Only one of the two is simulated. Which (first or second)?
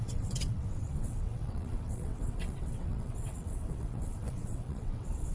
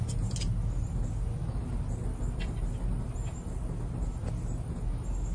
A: first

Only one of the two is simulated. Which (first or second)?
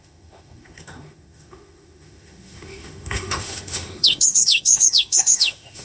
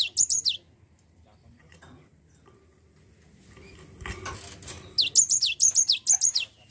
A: first